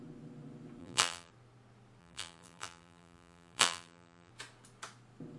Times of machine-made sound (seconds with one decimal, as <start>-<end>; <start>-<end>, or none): 0.8-1.3; 2.0-4.3